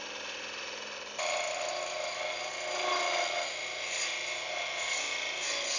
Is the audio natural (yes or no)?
yes